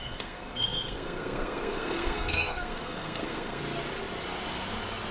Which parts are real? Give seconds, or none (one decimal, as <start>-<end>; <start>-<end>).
3.6-5.1